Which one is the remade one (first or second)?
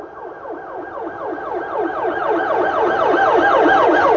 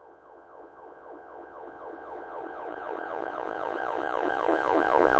second